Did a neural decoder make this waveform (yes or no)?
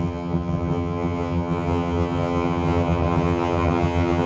yes